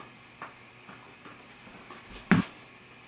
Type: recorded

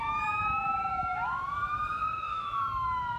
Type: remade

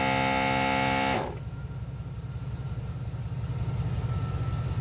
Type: recorded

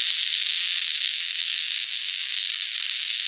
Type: remade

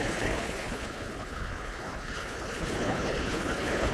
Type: remade